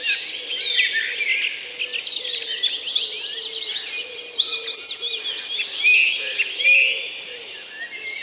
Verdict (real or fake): real